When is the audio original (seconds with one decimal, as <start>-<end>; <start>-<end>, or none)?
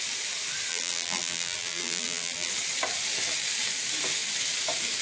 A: 0.0-0.7; 2.5-5.0